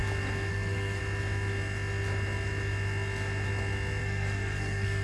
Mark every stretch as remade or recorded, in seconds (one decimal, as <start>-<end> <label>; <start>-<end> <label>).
0.0-0.5 recorded; 0.5-1.0 remade; 1.0-4.0 recorded; 4.0-5.0 remade